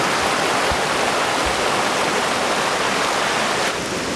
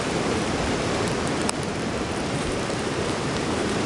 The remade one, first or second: second